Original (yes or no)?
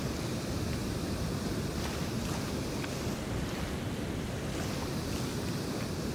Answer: yes